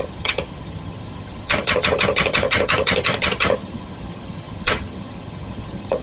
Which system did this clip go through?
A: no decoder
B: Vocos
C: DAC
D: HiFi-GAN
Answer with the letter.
D